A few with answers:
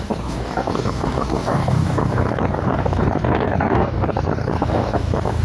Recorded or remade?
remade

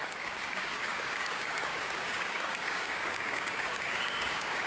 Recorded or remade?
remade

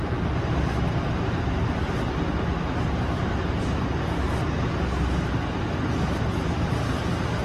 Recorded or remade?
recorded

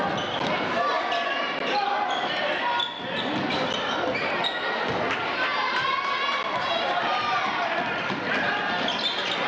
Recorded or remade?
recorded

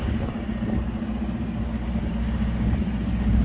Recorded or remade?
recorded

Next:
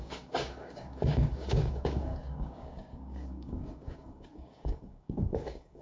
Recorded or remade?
remade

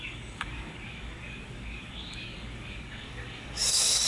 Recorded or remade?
remade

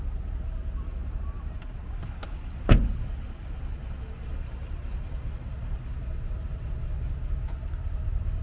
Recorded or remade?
recorded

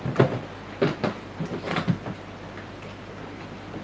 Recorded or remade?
recorded